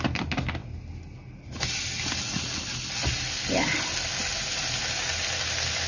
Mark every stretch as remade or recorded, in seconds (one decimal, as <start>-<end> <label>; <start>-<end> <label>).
0.0-5.9 recorded